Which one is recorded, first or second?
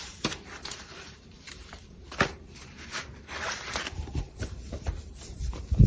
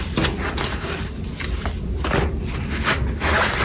second